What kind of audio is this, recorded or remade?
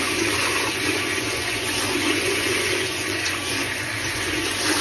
remade